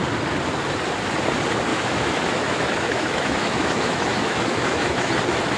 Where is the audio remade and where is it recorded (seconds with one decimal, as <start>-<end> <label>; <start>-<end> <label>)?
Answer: 0.0-1.7 recorded; 1.7-5.1 remade; 5.1-5.6 recorded

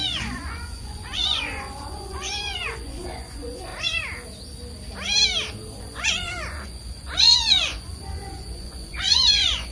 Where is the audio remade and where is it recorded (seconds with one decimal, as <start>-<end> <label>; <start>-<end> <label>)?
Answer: 0.0-3.7 remade; 3.7-5.8 recorded; 5.8-9.7 remade

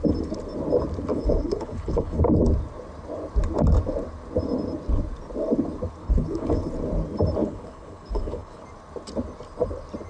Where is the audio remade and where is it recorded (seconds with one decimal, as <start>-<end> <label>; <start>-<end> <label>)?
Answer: 0.0-1.1 recorded; 1.1-2.2 remade; 2.2-6.0 recorded; 6.0-6.7 remade; 6.7-7.4 recorded; 7.4-8.6 remade; 8.6-10.1 recorded

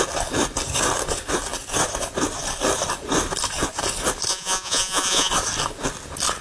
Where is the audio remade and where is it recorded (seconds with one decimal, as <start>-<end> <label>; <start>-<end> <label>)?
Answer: 0.0-4.3 recorded; 4.3-5.3 remade; 5.3-6.4 recorded

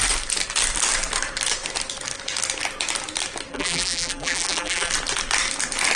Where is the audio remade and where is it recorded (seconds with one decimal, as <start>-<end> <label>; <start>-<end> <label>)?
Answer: 0.0-3.5 recorded; 3.5-4.9 remade; 4.9-6.0 recorded

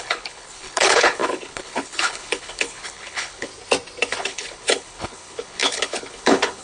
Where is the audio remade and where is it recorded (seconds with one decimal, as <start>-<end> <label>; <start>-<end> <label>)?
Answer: 0.0-3.5 remade; 3.5-4.2 recorded; 4.2-6.6 remade

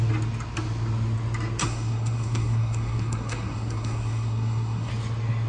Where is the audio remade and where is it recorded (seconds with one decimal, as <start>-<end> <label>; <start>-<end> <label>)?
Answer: 0.0-1.6 recorded; 1.6-4.9 remade; 4.9-5.5 recorded